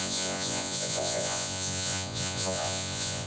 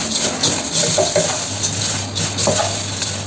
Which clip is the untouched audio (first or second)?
second